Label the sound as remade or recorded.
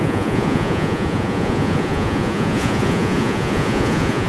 remade